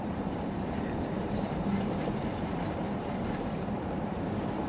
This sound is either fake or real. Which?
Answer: fake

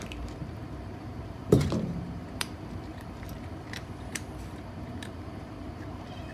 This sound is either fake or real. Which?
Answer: fake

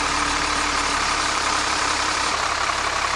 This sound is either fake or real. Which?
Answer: fake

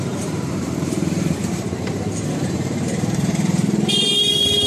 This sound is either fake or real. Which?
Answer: fake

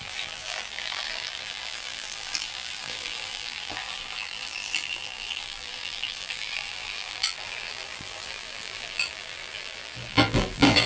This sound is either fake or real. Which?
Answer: fake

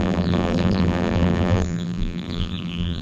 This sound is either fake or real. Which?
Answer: fake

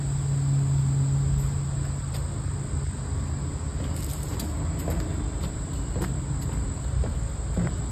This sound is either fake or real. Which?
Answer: real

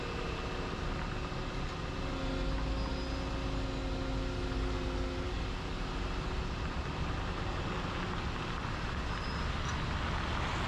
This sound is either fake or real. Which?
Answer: real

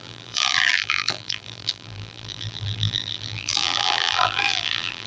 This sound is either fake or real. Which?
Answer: fake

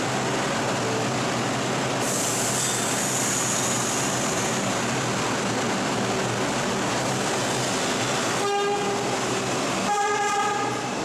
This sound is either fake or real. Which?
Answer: real